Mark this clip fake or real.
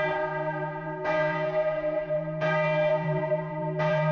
fake